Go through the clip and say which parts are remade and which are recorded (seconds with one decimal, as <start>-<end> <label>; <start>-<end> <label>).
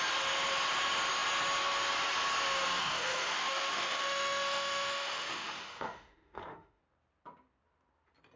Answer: 0.0-2.8 recorded; 2.8-6.8 remade; 6.8-8.4 recorded